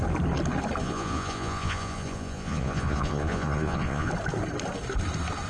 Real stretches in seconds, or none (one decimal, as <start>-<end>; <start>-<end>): 0.0-0.8; 4.1-5.5